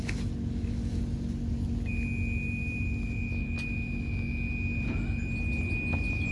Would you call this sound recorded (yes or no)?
yes